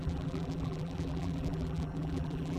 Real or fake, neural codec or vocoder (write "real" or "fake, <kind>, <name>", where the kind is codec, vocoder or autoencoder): fake, vocoder, BigVGAN v2